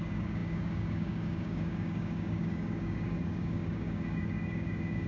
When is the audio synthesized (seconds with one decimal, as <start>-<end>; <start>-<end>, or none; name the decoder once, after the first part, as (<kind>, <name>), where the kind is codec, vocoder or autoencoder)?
0.0-5.1 (codec, DAC)